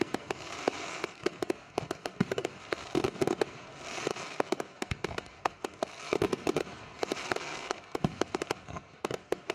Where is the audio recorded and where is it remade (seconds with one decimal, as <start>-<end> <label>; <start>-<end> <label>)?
0.0-9.5 remade